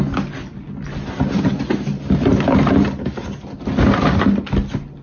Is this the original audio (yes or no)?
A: yes